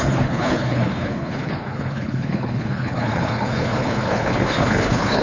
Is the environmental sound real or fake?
fake